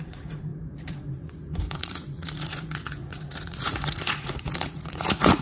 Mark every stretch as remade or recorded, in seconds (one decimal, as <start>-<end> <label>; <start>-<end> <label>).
0.0-5.4 remade